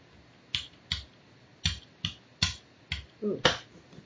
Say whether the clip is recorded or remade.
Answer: recorded